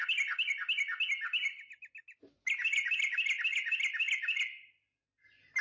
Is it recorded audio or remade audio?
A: recorded